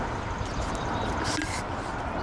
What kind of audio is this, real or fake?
real